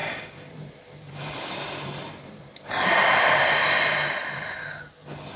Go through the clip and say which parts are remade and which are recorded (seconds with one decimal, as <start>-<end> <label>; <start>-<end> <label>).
0.0-3.2 remade; 3.2-4.2 recorded; 4.2-4.8 remade; 4.8-5.4 recorded